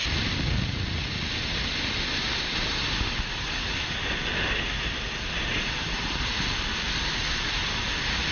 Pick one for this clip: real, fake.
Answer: real